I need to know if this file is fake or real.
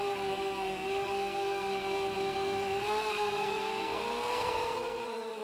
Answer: fake